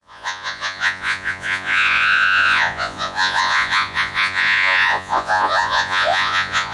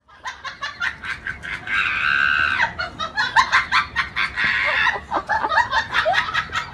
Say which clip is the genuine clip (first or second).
second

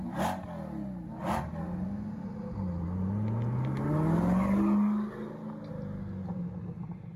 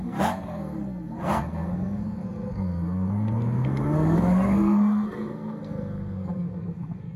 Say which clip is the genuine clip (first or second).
first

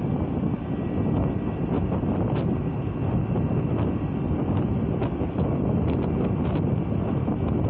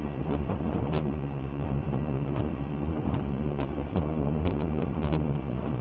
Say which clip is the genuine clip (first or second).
first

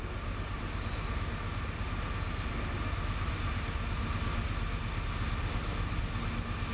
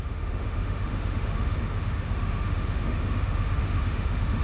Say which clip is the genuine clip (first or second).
first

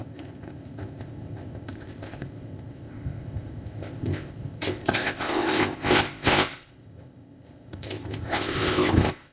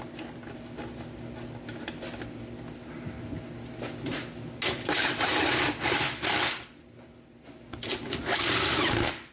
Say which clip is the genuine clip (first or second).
second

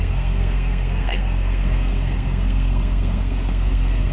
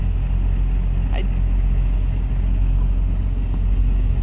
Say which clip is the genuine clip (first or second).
second